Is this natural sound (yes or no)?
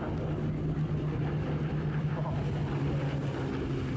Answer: yes